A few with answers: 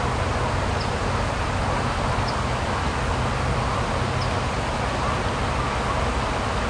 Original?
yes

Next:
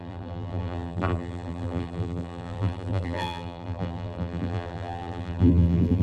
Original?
no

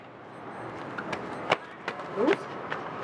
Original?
yes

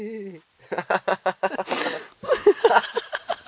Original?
yes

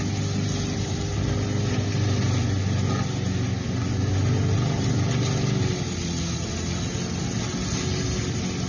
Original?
yes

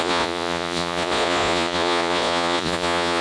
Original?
no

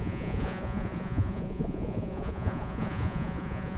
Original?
no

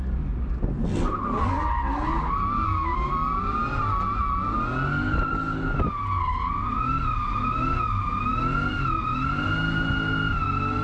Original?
yes